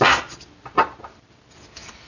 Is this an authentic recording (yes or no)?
yes